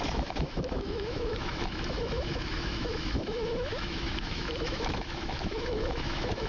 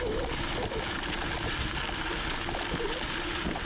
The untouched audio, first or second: second